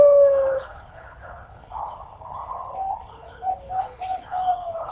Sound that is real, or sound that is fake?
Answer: fake